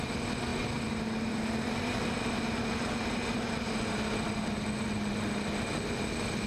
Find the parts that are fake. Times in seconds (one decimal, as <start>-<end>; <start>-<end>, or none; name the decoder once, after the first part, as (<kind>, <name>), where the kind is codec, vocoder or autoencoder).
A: none